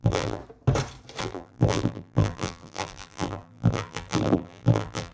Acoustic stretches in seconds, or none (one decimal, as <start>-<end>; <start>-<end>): 0.4-1.2